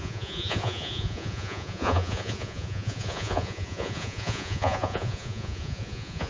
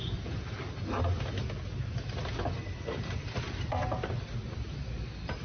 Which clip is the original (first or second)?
second